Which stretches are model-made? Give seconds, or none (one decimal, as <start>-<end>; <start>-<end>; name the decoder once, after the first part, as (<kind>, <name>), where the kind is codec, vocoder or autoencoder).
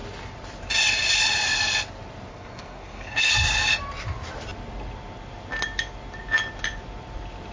2.3-3.3 (codec, SNAC)